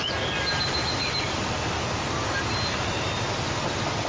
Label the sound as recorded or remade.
recorded